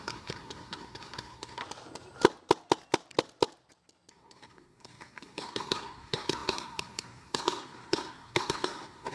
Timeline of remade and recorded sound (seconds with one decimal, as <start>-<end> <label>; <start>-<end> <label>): 0.0-1.6 remade; 1.6-4.1 recorded; 4.1-9.1 remade